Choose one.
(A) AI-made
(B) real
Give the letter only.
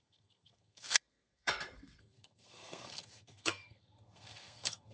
A